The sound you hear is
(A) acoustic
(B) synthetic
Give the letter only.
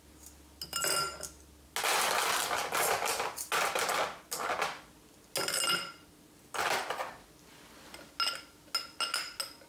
A